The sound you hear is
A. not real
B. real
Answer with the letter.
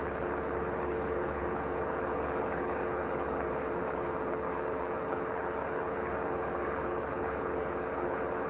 A